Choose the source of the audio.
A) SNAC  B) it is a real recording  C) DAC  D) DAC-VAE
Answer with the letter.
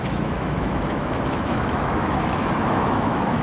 D